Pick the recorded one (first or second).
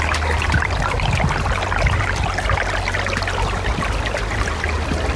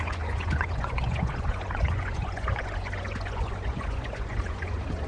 first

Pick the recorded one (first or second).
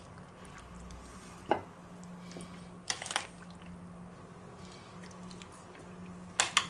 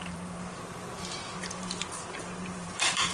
first